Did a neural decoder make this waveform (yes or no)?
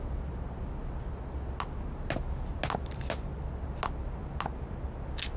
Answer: no